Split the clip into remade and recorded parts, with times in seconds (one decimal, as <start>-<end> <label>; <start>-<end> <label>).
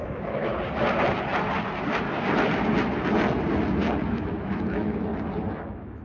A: 0.0-0.5 remade; 0.5-4.1 recorded; 4.1-5.1 remade; 5.1-5.6 recorded; 5.6-6.0 remade